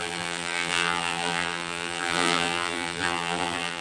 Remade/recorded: remade